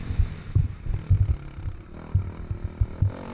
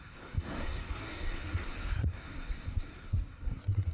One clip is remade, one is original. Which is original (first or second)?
first